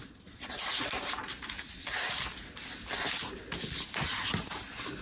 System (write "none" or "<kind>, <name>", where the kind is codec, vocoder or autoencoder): none